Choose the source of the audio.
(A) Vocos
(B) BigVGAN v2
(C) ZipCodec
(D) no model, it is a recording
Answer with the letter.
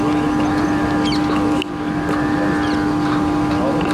D